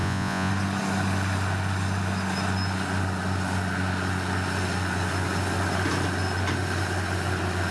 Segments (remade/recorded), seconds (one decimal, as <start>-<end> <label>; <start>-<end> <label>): 0.0-0.5 remade; 0.5-7.7 recorded